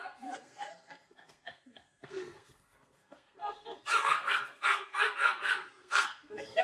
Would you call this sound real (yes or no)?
no